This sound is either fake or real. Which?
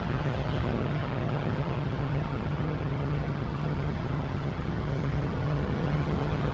fake